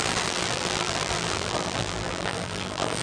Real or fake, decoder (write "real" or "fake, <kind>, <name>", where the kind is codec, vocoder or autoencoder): fake, vocoder, BigVGAN v2